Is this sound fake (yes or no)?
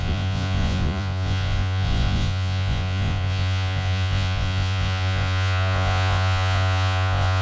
yes